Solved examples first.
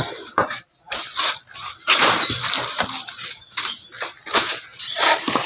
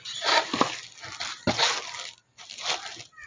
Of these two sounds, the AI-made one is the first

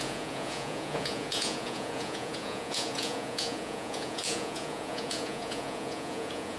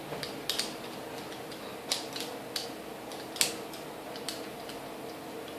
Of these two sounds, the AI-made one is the first